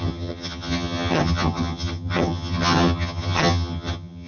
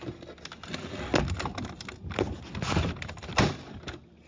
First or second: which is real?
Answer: second